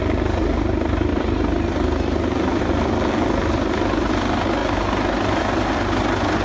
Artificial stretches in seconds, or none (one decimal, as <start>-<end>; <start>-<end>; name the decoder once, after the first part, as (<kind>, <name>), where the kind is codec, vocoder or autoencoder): none